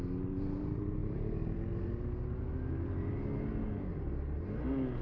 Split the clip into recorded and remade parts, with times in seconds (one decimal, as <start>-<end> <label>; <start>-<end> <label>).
0.0-5.0 recorded